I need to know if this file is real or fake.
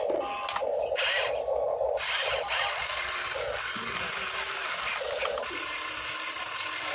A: real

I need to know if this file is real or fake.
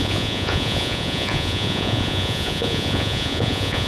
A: fake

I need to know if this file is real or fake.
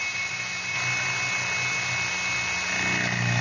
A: real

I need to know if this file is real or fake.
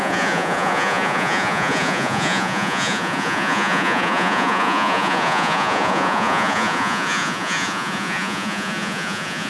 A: fake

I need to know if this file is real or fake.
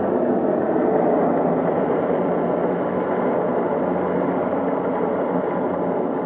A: real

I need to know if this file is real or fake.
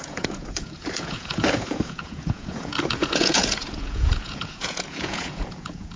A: fake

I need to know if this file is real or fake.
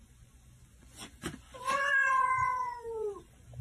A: fake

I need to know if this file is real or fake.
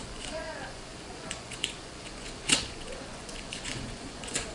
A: fake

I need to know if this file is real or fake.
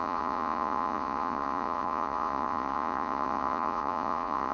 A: fake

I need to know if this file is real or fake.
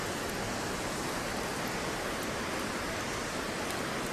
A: real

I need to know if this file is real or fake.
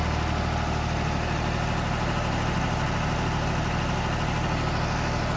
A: real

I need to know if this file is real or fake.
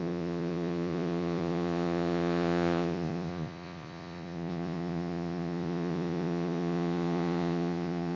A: fake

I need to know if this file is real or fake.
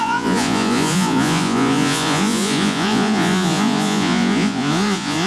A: fake